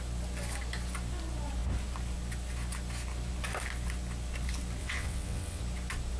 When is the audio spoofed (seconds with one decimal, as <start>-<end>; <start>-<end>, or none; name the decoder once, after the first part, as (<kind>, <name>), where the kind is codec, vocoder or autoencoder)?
4.8-5.6 (vocoder, WaveNeXt)